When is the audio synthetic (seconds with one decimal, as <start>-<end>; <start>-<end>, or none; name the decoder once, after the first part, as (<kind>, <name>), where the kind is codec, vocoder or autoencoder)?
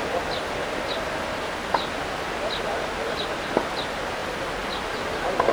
4.2-5.0 (vocoder, BigVGAN v2)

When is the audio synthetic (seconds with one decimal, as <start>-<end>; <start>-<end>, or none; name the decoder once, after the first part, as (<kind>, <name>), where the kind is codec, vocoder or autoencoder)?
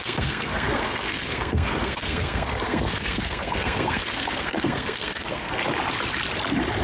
0.0-5.6 (codec, SNAC)